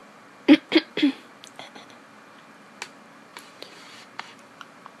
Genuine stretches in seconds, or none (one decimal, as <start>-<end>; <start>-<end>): 0.0-3.3; 4.5-5.0